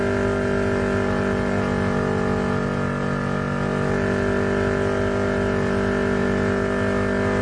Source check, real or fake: real